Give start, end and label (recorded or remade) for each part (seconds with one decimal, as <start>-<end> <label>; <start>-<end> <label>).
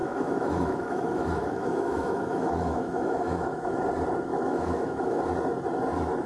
0.0-3.8 remade; 3.8-4.3 recorded; 4.3-5.2 remade; 5.2-6.3 recorded